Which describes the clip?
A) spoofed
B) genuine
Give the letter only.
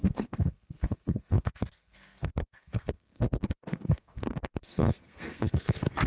A